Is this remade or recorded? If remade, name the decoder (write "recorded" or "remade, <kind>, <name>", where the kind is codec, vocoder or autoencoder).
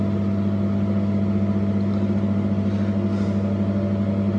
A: recorded